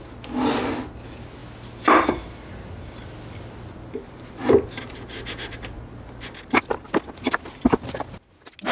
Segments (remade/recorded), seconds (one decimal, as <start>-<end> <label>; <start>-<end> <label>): 0.0-8.7 recorded